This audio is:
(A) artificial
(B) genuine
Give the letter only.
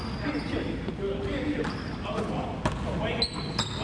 B